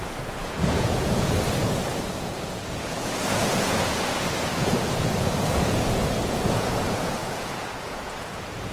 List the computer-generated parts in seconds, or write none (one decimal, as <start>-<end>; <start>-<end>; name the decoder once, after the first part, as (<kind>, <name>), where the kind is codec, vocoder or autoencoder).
0.0-8.7 (vocoder, Vocos)